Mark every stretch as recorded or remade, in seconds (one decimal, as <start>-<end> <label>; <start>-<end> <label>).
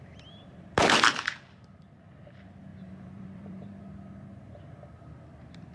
0.0-0.5 recorded; 0.5-1.4 remade; 1.4-2.7 recorded; 2.7-3.8 remade; 3.8-5.7 recorded